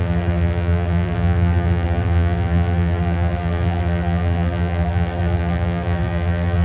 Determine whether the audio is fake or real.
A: fake